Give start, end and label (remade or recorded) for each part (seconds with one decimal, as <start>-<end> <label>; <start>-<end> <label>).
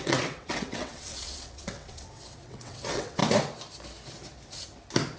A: 0.0-3.2 remade; 3.2-5.2 recorded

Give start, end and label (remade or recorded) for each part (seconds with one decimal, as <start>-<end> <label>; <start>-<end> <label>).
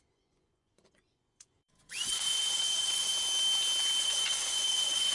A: 0.0-3.1 remade; 3.1-4.0 recorded; 4.0-5.1 remade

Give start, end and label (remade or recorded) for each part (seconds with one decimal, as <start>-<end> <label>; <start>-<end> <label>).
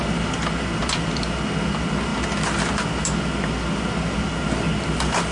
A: 0.0-5.3 recorded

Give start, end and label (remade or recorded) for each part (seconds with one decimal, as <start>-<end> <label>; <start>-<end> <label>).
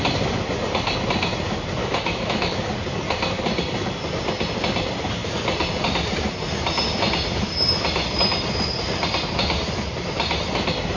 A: 0.0-1.8 recorded; 1.8-2.7 remade; 2.7-11.0 recorded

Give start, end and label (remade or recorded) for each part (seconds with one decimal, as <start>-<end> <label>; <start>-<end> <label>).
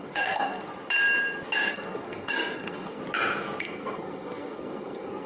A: 0.0-0.7 remade; 0.7-1.7 recorded; 1.7-3.0 remade; 3.0-3.6 recorded; 3.6-5.3 remade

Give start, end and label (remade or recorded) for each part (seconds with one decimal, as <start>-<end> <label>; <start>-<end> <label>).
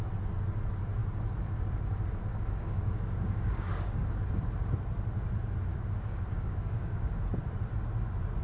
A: 0.0-2.3 recorded; 2.3-4.1 remade; 4.1-5.7 recorded; 5.7-7.2 remade; 7.2-8.4 recorded